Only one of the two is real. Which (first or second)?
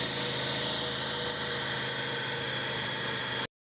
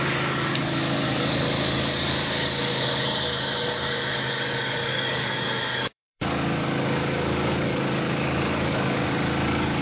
first